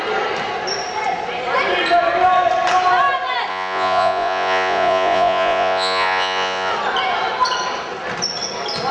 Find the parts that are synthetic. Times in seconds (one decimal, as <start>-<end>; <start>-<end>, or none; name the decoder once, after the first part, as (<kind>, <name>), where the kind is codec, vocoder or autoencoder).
3.5-6.7 (vocoder, Vocos)